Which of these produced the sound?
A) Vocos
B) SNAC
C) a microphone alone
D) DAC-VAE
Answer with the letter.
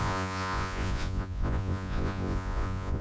A